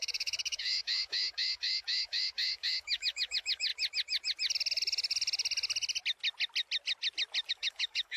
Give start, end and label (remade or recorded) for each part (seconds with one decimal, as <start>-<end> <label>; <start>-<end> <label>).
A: 0.0-3.7 remade; 3.7-7.5 recorded; 7.5-8.2 remade